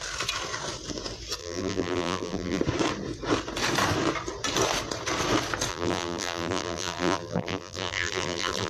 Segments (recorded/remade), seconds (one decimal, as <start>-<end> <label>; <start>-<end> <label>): 0.0-1.4 recorded; 1.4-2.6 remade; 2.6-5.7 recorded; 5.7-8.7 remade